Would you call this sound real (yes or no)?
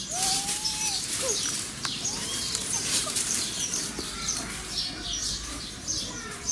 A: no